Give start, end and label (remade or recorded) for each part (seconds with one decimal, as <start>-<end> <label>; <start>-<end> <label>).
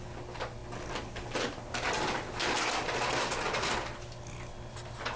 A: 0.0-5.2 recorded